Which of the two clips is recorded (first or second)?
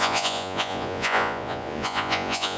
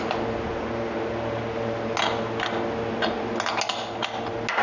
second